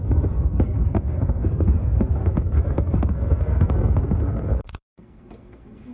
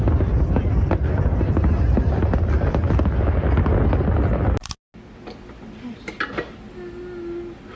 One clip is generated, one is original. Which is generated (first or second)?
first